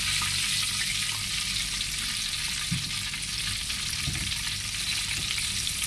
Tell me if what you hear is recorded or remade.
recorded